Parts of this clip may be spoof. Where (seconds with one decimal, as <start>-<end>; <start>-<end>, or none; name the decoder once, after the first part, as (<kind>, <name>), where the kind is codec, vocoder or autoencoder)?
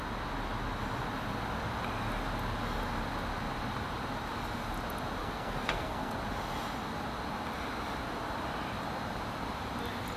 5.2-6.2 (codec, SNAC)